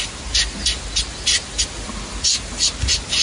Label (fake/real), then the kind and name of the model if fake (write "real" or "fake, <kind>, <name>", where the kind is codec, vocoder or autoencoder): real